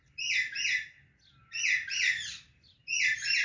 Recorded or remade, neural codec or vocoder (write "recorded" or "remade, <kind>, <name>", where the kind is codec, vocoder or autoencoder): recorded